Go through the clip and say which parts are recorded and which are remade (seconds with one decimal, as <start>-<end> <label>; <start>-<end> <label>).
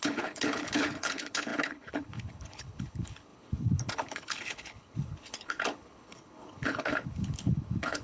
0.0-8.0 remade